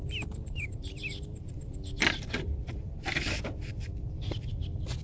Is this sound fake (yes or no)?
yes